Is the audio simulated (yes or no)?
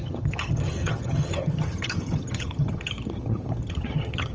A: yes